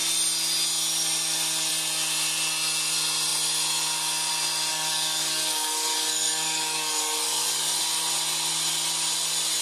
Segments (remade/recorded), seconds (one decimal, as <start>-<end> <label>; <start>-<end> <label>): 0.0-4.7 recorded; 4.7-7.8 remade; 7.8-9.6 recorded